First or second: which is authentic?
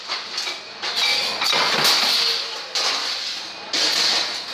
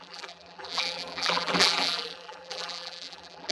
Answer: first